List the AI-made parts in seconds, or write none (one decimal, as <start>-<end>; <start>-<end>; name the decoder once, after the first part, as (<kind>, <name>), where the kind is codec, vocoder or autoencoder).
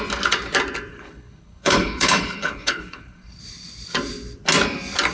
0.9-3.4 (codec, HILCodec)